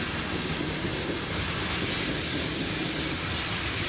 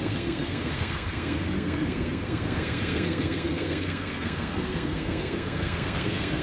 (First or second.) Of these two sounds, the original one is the first